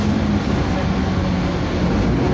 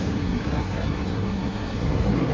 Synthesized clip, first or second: second